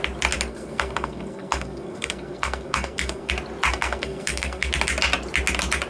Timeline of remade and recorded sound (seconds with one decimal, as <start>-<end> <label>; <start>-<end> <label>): 0.0-0.5 recorded; 0.5-3.3 remade; 3.3-3.7 recorded; 3.7-4.7 remade; 4.7-5.9 recorded